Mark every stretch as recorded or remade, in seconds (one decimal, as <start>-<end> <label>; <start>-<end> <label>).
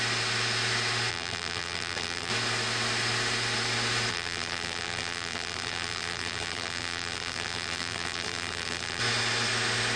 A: 0.0-1.1 recorded; 1.1-2.3 remade; 2.3-4.1 recorded; 4.1-9.0 remade; 9.0-10.0 recorded